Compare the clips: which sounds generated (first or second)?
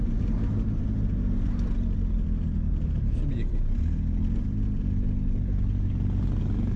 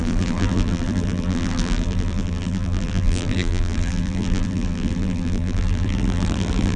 second